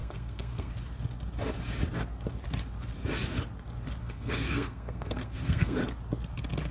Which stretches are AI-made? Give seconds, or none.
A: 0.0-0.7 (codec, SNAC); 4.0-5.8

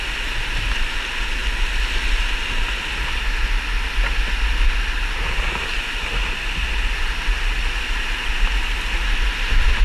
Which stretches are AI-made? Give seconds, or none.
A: none

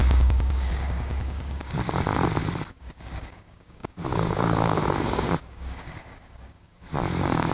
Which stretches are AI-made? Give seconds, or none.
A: 0.0-2.1 (codec, DAC); 2.7-7.5

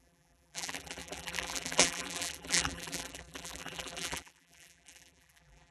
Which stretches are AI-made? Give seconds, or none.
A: 0.0-5.7 (vocoder, BigVGAN v2)

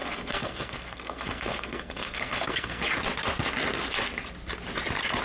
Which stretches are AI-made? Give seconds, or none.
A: 0.0-2.8 (codec, SNAC)

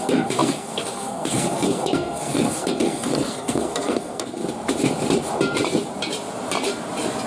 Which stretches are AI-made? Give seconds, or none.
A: 0.0-4.4 (codec, SNAC)